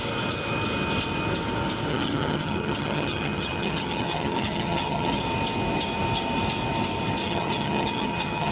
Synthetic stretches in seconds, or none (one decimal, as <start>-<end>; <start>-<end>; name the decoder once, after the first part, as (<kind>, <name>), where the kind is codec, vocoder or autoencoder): 1.9-5.2 (vocoder, HiFi-GAN); 7.2-8.5

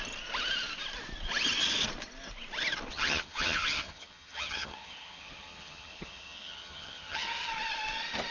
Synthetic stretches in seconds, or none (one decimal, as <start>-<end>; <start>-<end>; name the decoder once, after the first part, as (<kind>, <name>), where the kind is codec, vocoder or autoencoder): 2.9-7.5 (vocoder, HiFi-GAN)

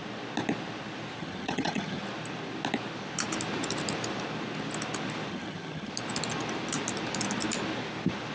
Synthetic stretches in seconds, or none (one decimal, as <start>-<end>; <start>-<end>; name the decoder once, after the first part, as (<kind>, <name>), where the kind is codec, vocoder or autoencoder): 1.2-2.0 (vocoder, HiFi-GAN); 5.3-5.9